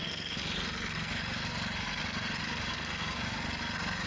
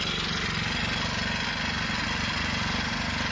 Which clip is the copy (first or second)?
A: first